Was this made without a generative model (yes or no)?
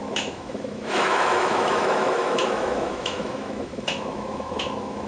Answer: no